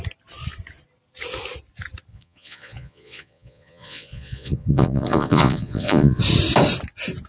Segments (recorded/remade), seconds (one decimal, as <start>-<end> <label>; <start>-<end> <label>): 0.0-2.1 recorded; 2.1-6.2 remade; 6.2-7.3 recorded